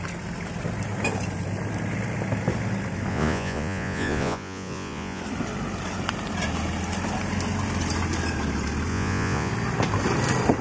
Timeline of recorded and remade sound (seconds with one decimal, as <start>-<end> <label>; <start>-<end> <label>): 0.0-3.1 recorded; 3.1-5.2 remade; 5.2-8.9 recorded; 8.9-9.5 remade; 9.5-10.6 recorded